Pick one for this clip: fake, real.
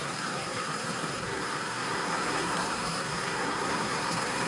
fake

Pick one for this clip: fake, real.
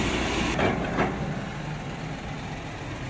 real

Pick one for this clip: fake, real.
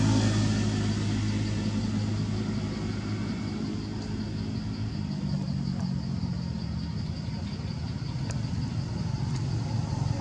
real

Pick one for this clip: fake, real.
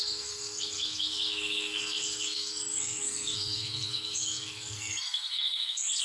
fake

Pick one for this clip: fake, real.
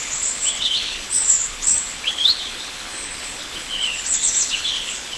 fake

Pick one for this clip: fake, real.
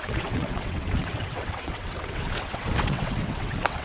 fake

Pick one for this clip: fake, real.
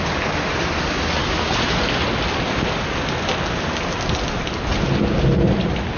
real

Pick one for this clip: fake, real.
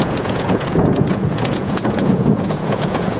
fake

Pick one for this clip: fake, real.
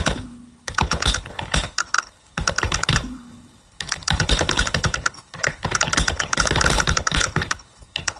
fake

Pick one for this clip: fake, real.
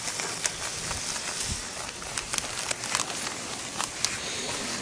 real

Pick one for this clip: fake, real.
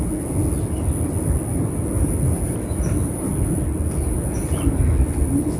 real